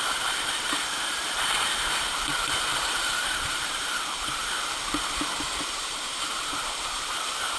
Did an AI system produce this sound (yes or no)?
yes